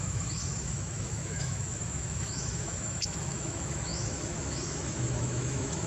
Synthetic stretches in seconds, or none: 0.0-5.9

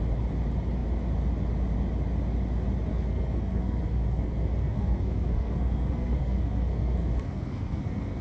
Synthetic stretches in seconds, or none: 2.9-8.2

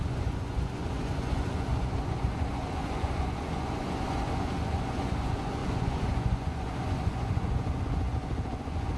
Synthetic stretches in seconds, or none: 0.0-9.0

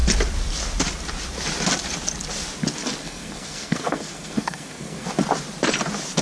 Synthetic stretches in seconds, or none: 3.0-5.1

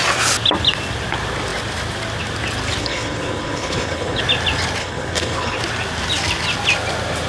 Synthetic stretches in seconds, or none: 2.8-4.2; 4.8-5.6

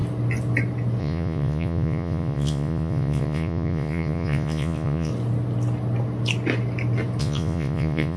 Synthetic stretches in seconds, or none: 1.0-5.1; 7.2-8.2

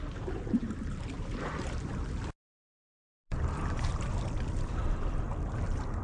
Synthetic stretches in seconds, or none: 0.6-1.3; 2.7-4.7

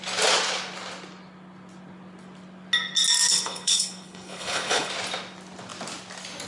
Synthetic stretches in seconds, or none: 3.3-4.9